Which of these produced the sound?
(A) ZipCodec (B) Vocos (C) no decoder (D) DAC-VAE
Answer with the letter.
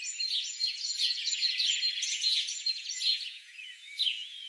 B